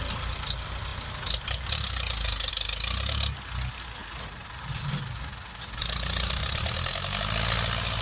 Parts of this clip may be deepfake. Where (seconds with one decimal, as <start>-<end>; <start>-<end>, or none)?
none